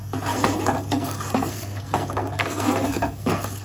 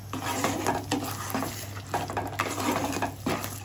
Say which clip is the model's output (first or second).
first